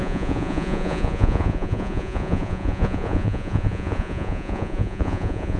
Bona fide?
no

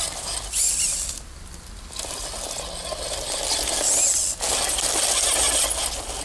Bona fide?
yes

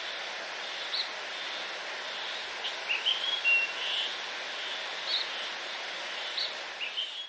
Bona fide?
yes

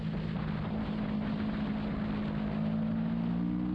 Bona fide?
yes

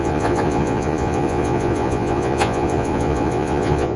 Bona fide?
no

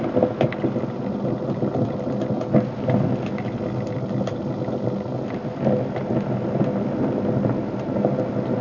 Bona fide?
yes